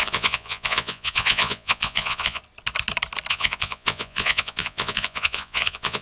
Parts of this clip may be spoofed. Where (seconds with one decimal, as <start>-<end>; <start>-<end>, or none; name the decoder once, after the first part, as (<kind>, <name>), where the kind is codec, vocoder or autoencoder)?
0.0-2.4 (vocoder, Vocos); 3.3-6.0